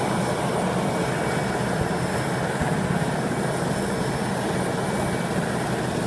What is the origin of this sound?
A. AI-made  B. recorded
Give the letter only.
B